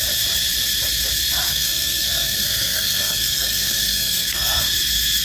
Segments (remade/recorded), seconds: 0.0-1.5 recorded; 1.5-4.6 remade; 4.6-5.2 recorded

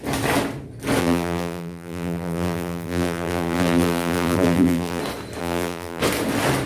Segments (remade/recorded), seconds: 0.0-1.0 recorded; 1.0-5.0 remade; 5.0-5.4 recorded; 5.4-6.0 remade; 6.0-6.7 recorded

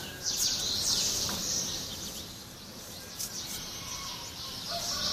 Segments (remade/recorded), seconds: 0.0-1.9 remade; 1.9-3.5 recorded; 3.5-5.1 remade

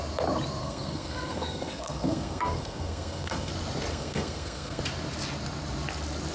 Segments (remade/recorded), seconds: 0.0-0.6 recorded; 0.6-3.5 remade; 3.5-3.9 recorded; 3.9-4.8 remade; 4.8-6.3 recorded

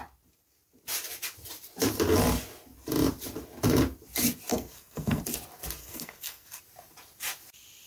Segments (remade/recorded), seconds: 0.0-4.5 recorded; 4.5-5.2 remade; 5.2-5.8 recorded; 5.8-6.6 remade; 6.6-7.9 recorded

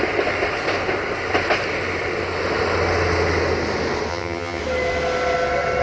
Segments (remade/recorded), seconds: 0.0-4.1 recorded; 4.1-4.6 remade; 4.6-5.8 recorded

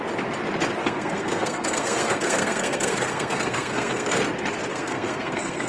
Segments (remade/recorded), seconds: 0.0-0.8 recorded; 0.8-4.2 remade; 4.2-4.7 recorded; 4.7-5.7 remade

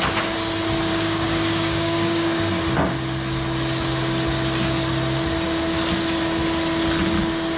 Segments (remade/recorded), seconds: 0.0-0.9 recorded; 0.9-2.5 remade; 2.5-7.6 recorded